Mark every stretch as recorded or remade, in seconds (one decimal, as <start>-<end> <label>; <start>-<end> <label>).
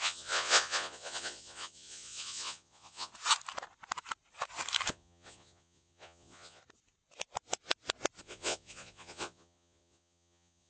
0.0-3.1 remade; 3.1-4.9 recorded; 4.9-6.6 remade; 6.6-8.2 recorded; 8.2-10.7 remade